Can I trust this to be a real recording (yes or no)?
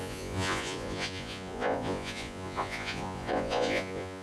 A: no